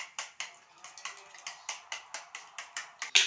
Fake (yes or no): no